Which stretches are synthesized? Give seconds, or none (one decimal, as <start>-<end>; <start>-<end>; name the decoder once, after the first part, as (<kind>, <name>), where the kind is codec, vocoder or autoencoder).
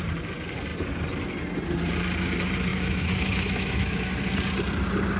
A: 2.7-4.1 (autoencoder, DAC-VAE)